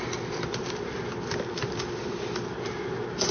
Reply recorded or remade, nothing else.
recorded